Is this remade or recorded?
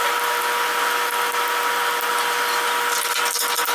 recorded